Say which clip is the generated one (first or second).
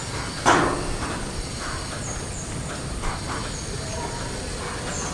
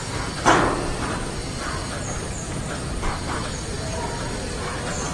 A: second